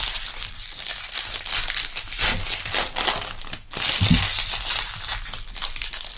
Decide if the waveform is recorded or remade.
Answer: recorded